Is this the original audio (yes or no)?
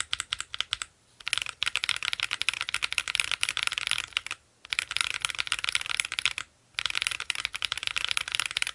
no